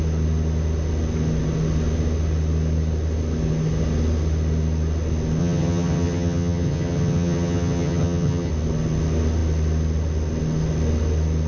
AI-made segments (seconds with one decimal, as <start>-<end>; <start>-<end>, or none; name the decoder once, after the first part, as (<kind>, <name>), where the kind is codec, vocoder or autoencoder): 5.4-8.5 (vocoder, HiFi-GAN)